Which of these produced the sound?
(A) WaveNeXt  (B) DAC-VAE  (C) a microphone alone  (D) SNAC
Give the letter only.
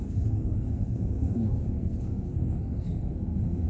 D